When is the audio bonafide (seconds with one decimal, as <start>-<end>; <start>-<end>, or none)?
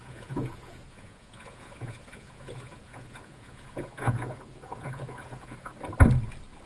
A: 5.7-6.7